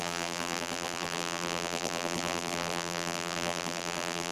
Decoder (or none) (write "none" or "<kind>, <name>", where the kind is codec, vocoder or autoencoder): vocoder, BigVGAN v2